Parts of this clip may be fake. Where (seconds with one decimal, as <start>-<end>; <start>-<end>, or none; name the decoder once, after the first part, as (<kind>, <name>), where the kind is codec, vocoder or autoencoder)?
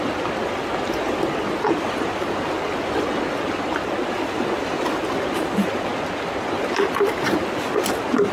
none